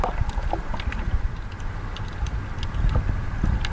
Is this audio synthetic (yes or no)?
no